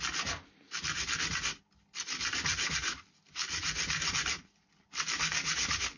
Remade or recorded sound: recorded